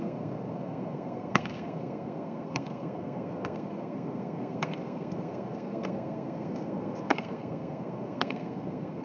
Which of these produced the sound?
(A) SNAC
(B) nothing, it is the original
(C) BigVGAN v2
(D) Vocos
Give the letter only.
A